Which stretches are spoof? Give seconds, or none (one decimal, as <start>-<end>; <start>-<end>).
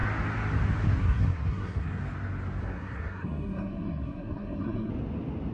1.0-2.0; 2.6-4.9